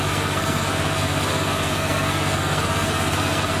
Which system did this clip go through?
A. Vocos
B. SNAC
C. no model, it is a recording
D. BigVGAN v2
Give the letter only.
B